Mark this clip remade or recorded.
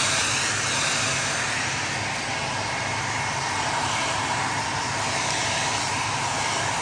recorded